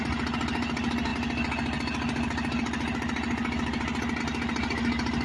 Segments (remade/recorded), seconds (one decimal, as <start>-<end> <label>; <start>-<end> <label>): 0.0-5.2 recorded